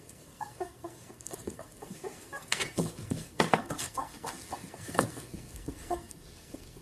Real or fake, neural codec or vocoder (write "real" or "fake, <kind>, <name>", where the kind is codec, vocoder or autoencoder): fake, codec, SNAC